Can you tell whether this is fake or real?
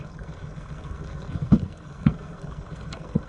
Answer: fake